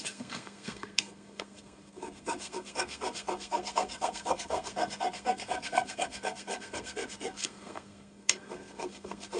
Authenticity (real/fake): fake